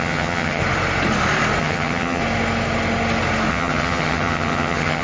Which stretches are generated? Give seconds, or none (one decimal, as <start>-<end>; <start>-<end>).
0.0-0.6; 1.6-2.2; 3.5-5.0